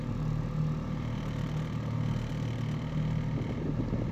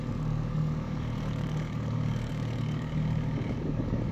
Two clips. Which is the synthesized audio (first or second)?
second